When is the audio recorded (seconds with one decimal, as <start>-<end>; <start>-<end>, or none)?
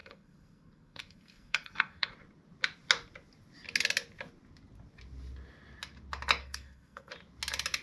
2.1-6.4; 7.1-7.8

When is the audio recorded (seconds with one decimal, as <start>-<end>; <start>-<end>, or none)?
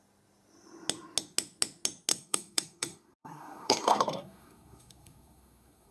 0.0-2.1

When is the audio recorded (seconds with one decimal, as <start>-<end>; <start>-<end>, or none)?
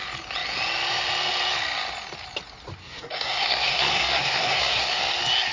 0.0-2.8; 5.0-5.5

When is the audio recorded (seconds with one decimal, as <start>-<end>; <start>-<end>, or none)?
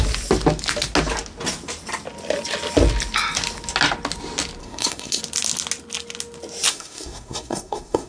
0.0-4.6; 5.2-6.7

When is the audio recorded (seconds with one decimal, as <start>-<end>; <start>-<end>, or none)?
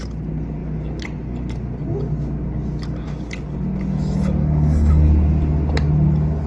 0.0-4.4; 4.9-6.5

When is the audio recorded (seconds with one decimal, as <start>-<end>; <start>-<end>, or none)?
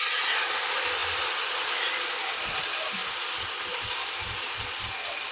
0.0-5.3